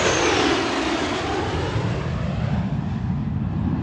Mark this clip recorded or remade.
recorded